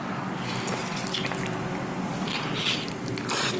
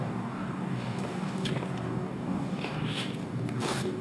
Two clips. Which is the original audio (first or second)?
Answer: first